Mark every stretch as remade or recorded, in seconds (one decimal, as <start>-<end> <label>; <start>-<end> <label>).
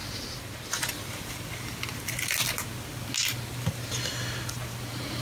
0.0-5.2 recorded